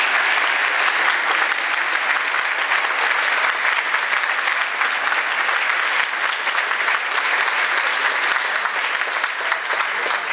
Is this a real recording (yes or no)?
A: yes